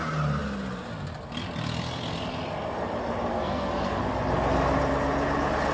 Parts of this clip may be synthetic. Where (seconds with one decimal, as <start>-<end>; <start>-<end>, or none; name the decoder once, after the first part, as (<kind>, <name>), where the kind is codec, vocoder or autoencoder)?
3.3-4.0 (codec, SNAC)